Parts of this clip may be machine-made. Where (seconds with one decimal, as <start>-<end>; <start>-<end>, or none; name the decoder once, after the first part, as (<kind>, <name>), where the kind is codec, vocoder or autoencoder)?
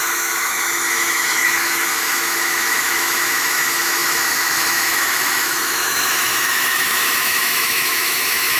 0.0-8.6 (autoencoder, DAC-VAE)